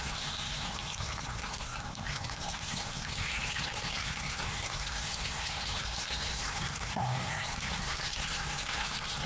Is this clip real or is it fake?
fake